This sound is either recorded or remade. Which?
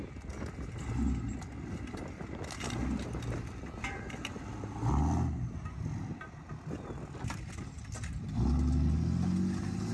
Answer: recorded